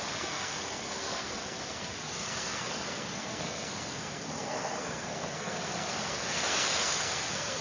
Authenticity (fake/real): fake